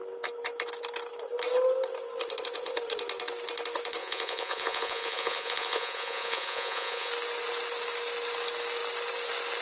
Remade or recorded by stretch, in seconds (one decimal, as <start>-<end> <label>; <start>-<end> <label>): 0.0-4.0 recorded; 4.0-7.1 remade; 7.1-9.6 recorded